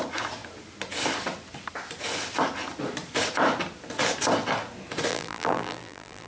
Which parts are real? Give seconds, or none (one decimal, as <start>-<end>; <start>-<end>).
0.0-5.1